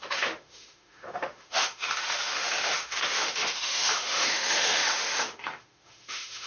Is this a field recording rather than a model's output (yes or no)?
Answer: no